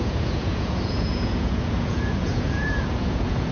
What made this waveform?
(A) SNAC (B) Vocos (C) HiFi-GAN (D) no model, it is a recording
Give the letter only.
B